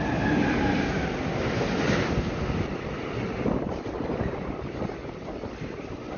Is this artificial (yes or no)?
no